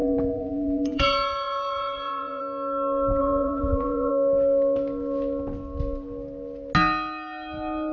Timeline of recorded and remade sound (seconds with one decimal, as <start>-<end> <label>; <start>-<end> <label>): 0.0-2.4 remade; 2.4-3.2 recorded; 3.2-4.1 remade; 4.1-7.9 recorded